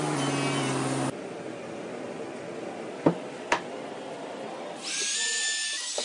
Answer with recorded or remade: recorded